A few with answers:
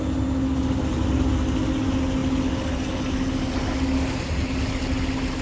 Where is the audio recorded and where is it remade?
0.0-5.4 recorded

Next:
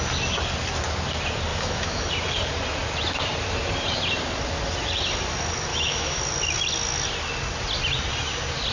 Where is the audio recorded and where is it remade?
0.0-1.5 recorded; 1.5-2.1 remade; 2.1-5.7 recorded; 5.7-6.2 remade; 6.2-8.7 recorded

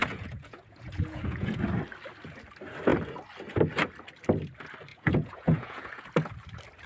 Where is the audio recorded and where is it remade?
0.0-1.6 remade; 1.6-4.9 recorded; 4.9-6.1 remade; 6.1-6.9 recorded

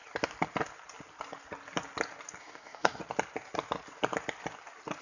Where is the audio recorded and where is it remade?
0.0-2.4 recorded; 2.4-3.0 remade; 3.0-5.0 recorded

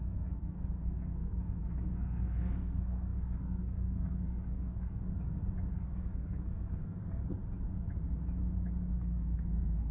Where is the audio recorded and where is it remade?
0.0-5.1 remade; 5.1-5.7 recorded; 5.7-7.2 remade; 7.2-8.9 recorded; 8.9-9.9 remade

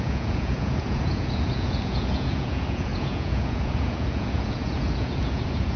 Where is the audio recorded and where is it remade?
0.0-5.8 remade